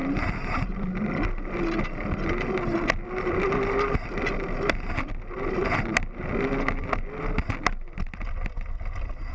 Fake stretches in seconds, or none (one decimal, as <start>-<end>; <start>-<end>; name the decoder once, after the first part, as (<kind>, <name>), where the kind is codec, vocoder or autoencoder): none